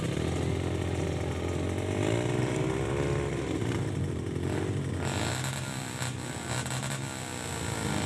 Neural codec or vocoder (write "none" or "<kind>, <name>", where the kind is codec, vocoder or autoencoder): none